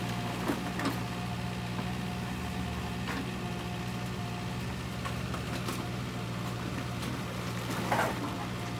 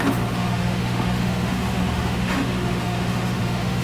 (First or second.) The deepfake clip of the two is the second